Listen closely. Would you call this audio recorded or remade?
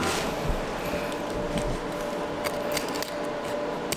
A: recorded